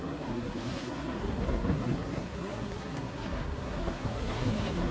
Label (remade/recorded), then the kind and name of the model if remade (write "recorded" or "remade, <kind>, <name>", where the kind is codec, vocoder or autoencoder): remade, codec, SNAC